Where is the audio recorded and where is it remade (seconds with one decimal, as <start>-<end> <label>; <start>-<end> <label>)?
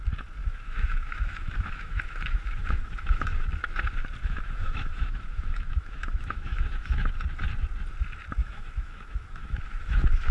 0.0-0.4 recorded; 0.4-3.5 remade; 3.5-4.2 recorded; 4.2-7.1 remade; 7.1-8.4 recorded; 8.4-10.3 remade